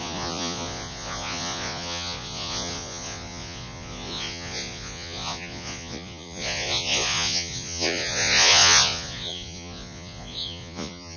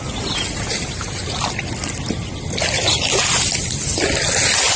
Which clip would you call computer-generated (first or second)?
first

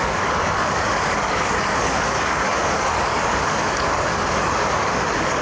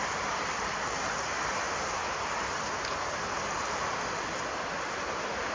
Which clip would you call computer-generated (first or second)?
first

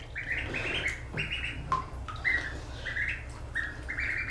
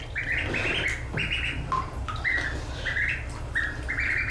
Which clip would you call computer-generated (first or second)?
second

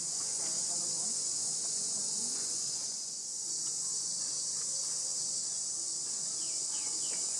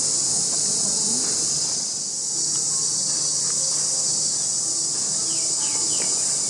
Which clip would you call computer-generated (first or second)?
first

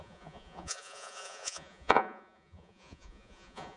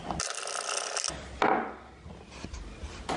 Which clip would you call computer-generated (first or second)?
first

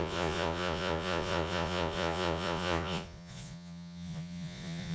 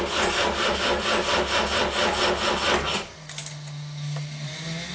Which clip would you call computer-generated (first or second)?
first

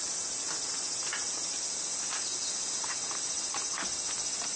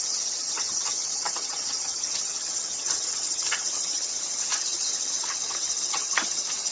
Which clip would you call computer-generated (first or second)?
second